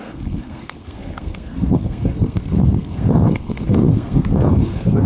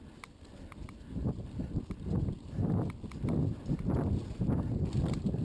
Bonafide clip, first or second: second